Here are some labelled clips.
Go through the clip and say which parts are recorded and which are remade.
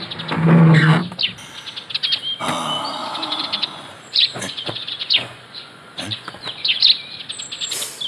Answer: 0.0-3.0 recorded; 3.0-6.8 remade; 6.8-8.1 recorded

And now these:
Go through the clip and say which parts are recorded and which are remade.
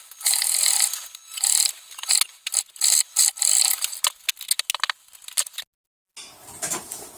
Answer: 0.0-7.2 recorded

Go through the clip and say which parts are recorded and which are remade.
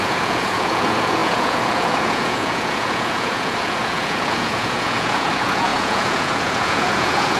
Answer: 0.0-7.4 remade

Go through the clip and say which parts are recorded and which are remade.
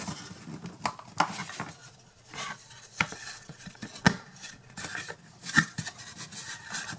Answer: 0.0-1.8 recorded; 1.8-4.8 remade; 4.8-7.0 recorded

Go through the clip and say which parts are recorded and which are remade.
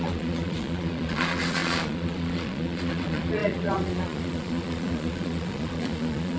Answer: 0.0-6.4 remade